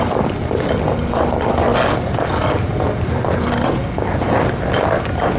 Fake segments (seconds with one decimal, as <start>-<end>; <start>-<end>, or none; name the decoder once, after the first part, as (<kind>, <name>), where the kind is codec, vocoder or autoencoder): none